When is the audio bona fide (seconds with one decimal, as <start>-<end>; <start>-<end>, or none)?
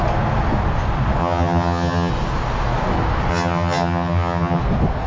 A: 0.0-1.2; 2.1-3.3; 4.6-5.1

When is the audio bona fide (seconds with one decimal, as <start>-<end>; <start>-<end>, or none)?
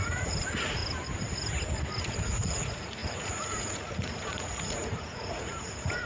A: 0.8-2.0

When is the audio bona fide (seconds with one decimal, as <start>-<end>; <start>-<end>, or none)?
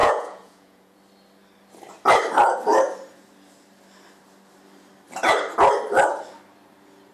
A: 1.0-7.1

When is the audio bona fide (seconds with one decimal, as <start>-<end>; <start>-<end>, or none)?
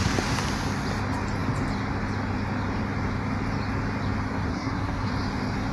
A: 0.0-4.5; 5.1-5.7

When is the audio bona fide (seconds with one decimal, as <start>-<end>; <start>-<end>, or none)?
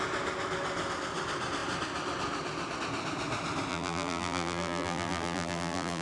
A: 0.0-3.7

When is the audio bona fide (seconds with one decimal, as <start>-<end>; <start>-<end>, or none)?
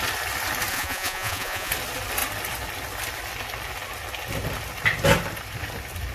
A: 0.0-0.7; 1.7-6.1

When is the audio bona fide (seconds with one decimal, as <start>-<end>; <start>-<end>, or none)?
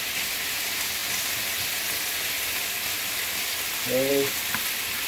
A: 0.0-5.1